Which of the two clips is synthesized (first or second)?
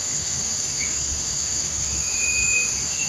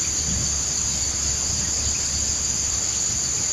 first